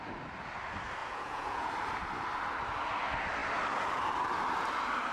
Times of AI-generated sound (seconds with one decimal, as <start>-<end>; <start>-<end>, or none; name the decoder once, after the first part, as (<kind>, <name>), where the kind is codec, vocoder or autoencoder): 1.0-1.7 (vocoder, Vocos)